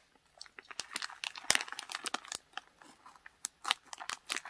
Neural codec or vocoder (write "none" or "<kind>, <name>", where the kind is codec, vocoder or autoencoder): none